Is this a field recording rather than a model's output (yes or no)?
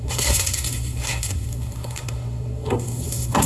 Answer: no